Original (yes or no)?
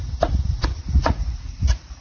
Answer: no